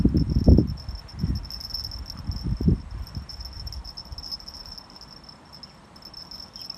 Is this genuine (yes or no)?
yes